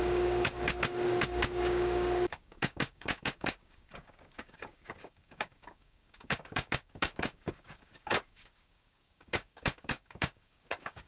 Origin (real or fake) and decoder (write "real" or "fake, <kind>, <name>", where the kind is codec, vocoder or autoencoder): fake, codec, DAC